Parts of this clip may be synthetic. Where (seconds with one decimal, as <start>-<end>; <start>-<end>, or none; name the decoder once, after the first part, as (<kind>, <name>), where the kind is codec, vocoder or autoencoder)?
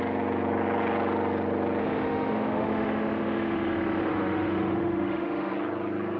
1.8-5.5 (autoencoder, DAC-VAE)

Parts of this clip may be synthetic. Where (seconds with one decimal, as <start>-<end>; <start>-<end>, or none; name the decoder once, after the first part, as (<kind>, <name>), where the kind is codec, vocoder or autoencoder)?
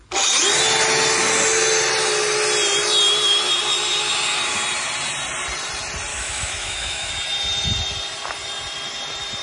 6.1-7.1 (autoencoder, DAC-VAE)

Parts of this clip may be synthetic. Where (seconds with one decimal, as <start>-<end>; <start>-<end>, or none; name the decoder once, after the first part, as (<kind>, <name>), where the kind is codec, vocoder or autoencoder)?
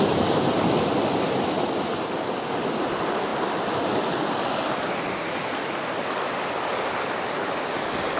none